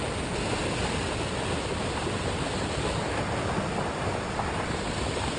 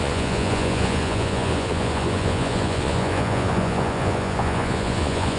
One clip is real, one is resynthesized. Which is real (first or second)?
first